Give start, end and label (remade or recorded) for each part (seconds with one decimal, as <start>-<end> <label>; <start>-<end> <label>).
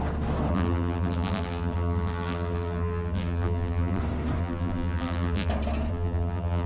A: 0.0-0.5 recorded; 0.5-4.0 remade; 4.0-4.4 recorded; 4.4-5.5 remade; 5.5-5.9 recorded; 5.9-6.7 remade